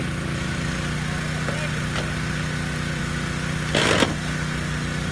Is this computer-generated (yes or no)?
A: no